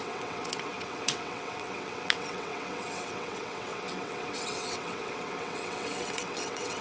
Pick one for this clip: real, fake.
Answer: fake